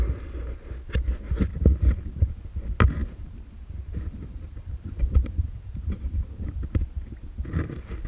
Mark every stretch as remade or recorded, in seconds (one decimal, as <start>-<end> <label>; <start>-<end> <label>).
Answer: 0.0-3.0 recorded; 3.0-5.9 remade; 5.9-8.1 recorded